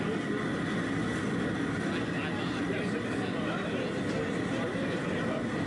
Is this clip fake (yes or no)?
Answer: no